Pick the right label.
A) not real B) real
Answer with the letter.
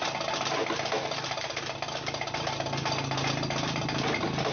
B